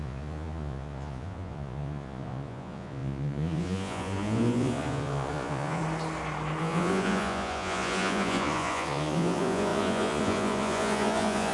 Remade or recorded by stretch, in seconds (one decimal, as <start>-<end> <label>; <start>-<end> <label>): 0.0-5.8 remade; 5.8-6.6 recorded; 6.6-11.5 remade